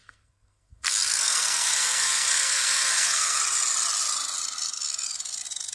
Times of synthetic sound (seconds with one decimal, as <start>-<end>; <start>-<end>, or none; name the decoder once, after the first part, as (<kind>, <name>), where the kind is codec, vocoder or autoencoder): 0.0-3.4 (codec, SNAC)